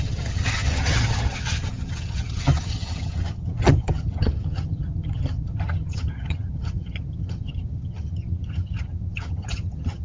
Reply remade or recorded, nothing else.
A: remade